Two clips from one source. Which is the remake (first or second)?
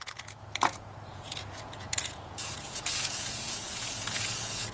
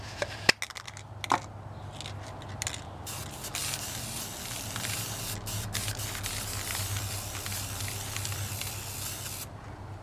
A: first